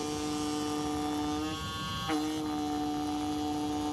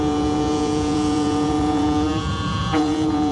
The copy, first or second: second